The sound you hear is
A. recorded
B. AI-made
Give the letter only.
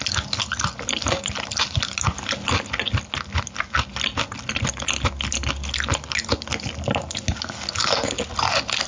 A